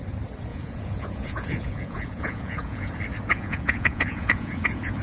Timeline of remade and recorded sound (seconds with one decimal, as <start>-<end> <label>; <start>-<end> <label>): 0.0-0.5 recorded; 0.5-2.9 remade; 2.9-3.3 recorded; 3.3-5.0 remade